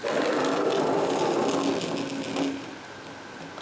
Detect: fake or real real